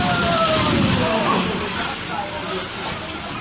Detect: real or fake real